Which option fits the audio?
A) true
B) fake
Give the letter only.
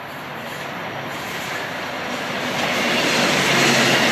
A